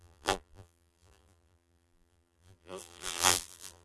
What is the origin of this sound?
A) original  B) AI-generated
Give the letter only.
B